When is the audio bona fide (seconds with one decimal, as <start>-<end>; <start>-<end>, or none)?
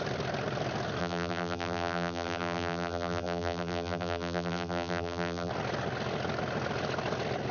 0.0-1.0; 5.5-7.5